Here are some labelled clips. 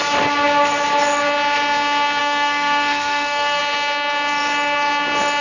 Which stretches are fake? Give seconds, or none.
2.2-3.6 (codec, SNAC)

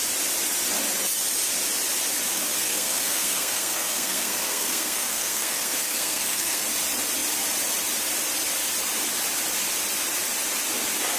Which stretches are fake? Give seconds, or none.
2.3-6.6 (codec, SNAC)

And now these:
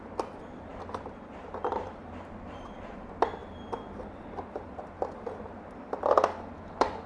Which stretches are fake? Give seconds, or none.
none